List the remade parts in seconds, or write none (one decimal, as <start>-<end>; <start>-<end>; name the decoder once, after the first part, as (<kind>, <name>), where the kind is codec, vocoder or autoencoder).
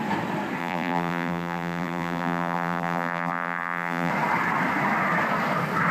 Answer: 0.6-4.1 (vocoder, BigVGAN v2)